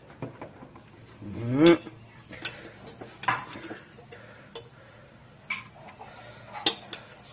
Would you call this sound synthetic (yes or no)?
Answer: no